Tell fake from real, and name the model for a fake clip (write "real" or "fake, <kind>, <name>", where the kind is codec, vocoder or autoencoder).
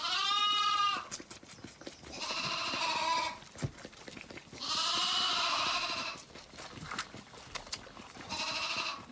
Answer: real